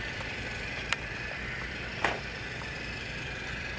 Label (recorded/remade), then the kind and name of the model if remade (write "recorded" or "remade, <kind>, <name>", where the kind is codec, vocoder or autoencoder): remade, vocoder, BigVGAN v2